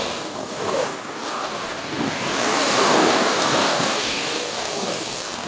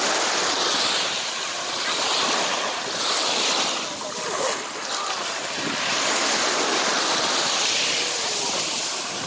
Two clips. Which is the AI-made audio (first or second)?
first